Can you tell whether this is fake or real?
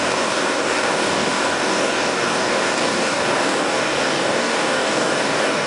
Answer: fake